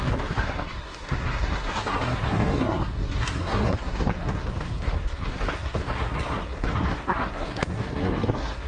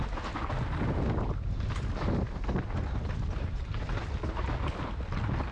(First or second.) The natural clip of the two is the second